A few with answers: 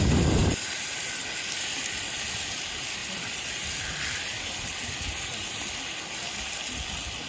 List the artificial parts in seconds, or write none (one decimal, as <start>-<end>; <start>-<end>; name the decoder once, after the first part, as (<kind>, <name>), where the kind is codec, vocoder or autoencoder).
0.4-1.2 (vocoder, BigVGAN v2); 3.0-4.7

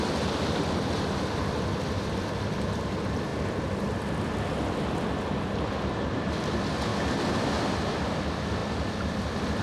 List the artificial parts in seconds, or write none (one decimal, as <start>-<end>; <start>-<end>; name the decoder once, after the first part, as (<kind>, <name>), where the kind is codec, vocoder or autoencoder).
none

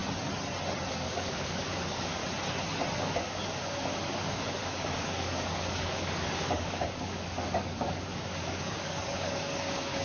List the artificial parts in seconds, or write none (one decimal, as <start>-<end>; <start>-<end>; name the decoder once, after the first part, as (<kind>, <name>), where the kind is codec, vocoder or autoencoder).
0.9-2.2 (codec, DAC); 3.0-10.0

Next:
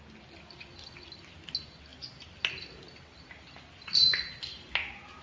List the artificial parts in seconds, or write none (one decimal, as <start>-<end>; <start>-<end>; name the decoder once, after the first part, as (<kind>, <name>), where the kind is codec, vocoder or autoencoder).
none

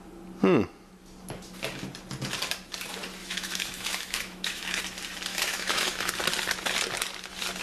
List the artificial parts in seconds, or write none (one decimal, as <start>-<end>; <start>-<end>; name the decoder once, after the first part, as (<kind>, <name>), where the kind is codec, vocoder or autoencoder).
3.2-4.8 (autoencoder, DAC-VAE); 5.3-6.1

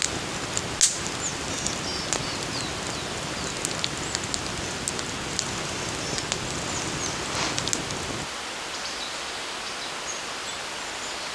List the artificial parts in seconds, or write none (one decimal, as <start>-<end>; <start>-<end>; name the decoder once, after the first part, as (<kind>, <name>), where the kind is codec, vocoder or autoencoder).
none

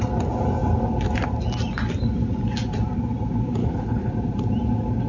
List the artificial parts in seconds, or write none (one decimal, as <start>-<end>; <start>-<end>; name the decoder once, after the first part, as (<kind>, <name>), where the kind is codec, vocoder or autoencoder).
3.6-4.1 (codec, HILCodec)